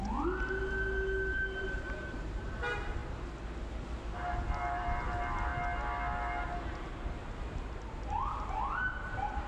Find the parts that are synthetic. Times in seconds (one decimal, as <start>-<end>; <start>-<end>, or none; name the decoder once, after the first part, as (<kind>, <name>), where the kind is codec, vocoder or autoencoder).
1.3-3.0 (vocoder, BigVGAN v2); 3.7-5.5; 9.1-9.5

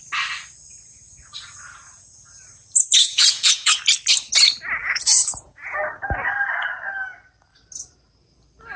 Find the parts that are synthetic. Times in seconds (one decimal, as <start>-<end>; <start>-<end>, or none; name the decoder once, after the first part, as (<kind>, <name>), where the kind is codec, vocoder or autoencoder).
3.0-3.8 (vocoder, Vocos); 4.8-5.8

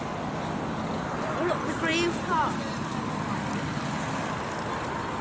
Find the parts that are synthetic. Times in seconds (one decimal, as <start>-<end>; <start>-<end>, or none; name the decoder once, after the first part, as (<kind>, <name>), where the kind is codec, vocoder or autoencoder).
none

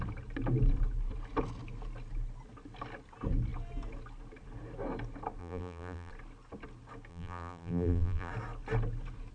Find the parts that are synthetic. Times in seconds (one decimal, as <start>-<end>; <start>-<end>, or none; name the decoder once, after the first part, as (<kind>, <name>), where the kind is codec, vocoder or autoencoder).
5.4-6.1 (vocoder, BigVGAN v2); 7.1-8.3

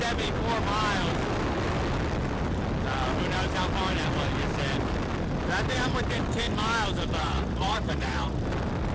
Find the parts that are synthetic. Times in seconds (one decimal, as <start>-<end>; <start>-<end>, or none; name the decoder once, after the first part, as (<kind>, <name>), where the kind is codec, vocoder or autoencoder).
7.2-8.4 (vocoder, Vocos)